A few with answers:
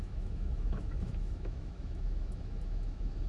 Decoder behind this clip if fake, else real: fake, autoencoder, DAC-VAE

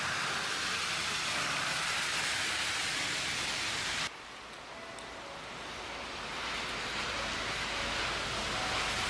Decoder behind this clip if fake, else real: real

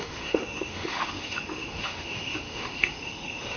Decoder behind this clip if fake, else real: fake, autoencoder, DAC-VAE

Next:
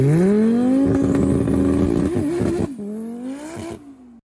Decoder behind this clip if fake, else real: real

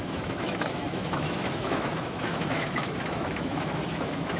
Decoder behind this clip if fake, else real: fake, autoencoder, DAC-VAE